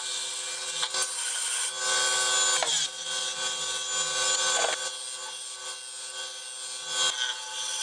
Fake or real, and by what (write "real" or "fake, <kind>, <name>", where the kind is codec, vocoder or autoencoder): real